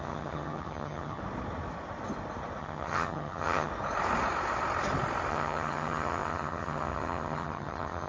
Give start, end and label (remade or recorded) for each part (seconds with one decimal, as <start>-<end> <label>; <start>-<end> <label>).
0.0-1.2 remade; 1.2-2.6 recorded; 2.6-3.7 remade; 3.7-5.3 recorded; 5.3-8.1 remade